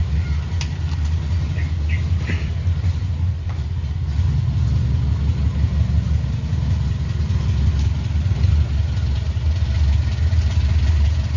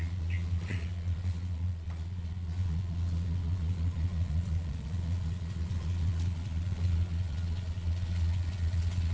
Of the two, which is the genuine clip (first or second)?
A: first